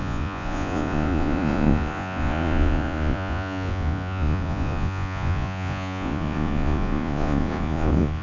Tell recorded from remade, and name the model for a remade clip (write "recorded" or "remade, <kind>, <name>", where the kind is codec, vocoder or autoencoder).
remade, vocoder, Vocos